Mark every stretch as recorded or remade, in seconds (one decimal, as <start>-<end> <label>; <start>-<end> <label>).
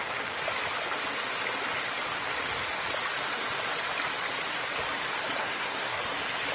0.0-5.4 recorded; 5.4-6.0 remade; 6.0-6.5 recorded